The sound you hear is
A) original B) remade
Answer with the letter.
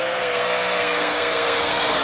B